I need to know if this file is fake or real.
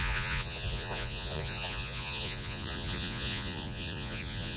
fake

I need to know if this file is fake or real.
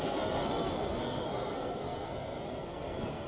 fake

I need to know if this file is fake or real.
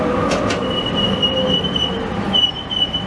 real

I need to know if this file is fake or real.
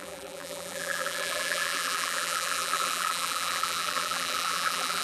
fake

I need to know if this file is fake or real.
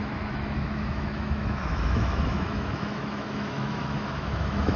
fake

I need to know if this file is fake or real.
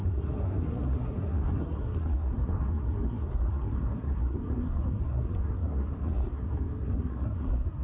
fake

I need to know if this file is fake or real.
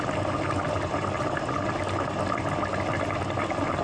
real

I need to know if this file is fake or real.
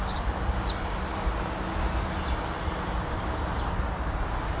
real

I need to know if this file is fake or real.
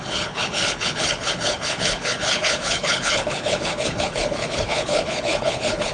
fake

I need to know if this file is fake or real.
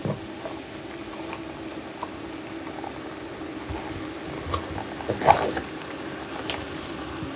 real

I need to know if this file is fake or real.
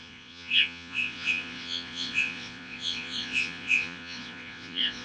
fake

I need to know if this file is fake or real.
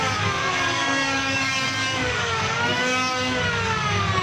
fake